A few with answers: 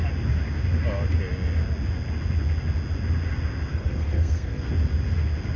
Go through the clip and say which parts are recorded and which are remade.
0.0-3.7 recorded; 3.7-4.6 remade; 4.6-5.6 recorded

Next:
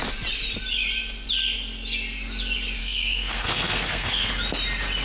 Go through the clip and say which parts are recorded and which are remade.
0.0-2.8 recorded; 2.8-4.3 remade; 4.3-5.0 recorded

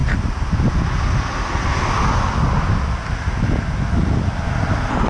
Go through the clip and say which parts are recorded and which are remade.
0.0-5.1 recorded

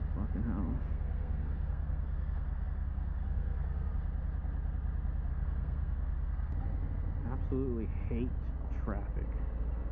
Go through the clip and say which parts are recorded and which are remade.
0.0-0.7 recorded; 0.7-3.9 remade; 3.9-5.3 recorded; 5.3-6.5 remade; 6.5-9.9 recorded

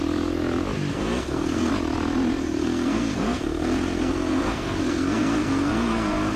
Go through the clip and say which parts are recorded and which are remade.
0.0-0.9 recorded; 0.9-1.7 remade; 1.7-2.4 recorded; 2.4-6.4 remade